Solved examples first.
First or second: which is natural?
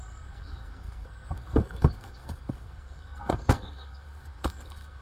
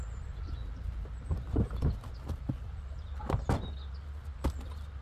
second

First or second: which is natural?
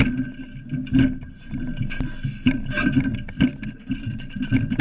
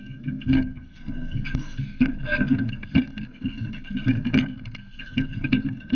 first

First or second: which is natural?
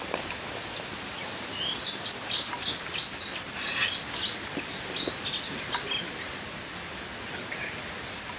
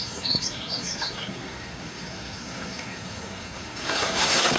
first